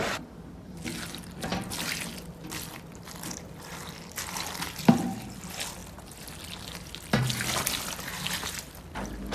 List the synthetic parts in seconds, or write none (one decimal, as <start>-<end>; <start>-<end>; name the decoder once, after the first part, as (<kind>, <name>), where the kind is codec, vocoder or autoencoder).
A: none